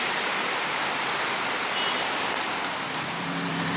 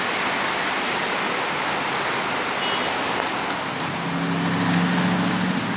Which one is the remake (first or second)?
first